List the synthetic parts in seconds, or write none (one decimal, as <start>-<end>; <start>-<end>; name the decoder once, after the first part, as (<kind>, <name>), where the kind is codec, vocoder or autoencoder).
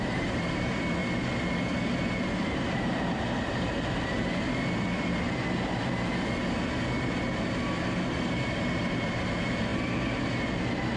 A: 0.0-1.0 (vocoder, BigVGAN v2); 2.1-4.2; 7.8-9.7; 10.6-11.0